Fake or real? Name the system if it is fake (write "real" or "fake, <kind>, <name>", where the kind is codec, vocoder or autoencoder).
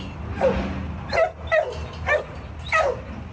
real